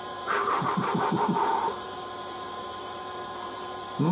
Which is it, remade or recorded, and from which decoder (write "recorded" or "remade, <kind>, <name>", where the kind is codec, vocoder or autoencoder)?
remade, vocoder, BigVGAN v2